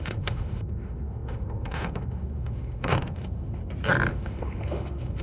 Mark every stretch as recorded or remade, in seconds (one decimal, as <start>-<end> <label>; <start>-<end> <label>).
0.0-3.6 remade; 3.6-4.1 recorded; 4.1-5.2 remade